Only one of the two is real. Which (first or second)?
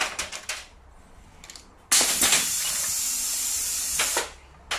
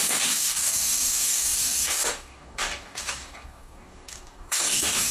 first